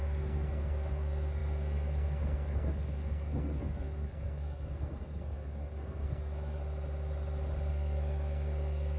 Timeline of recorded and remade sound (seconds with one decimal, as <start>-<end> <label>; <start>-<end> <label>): 0.0-6.6 remade; 6.6-7.7 recorded; 7.7-9.0 remade